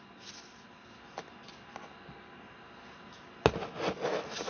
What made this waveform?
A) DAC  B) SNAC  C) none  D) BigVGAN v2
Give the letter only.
C